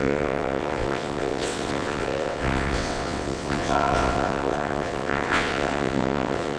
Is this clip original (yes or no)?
no